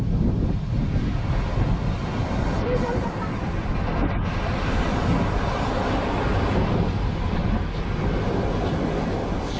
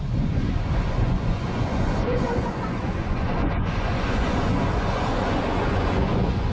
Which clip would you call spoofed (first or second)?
second